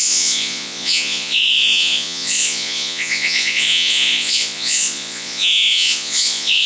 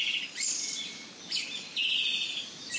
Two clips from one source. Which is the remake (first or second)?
first